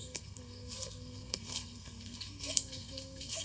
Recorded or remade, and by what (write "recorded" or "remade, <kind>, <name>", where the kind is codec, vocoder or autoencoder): remade, codec, SNAC